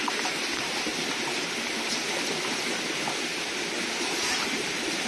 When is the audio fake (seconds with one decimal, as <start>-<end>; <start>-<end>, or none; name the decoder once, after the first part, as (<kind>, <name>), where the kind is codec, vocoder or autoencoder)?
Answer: 0.0-0.9 (vocoder, BigVGAN v2); 4.0-5.1